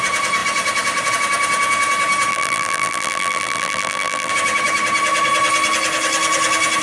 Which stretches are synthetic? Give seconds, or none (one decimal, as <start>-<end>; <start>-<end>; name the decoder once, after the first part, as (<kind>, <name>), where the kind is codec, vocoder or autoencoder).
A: 2.3-4.3 (vocoder, BigVGAN v2)